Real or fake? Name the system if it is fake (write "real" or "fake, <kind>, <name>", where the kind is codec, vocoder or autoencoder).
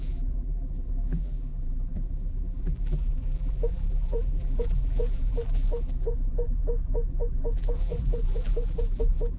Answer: fake, vocoder, BigVGAN v2